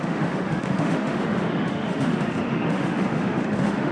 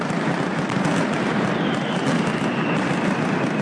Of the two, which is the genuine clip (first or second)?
second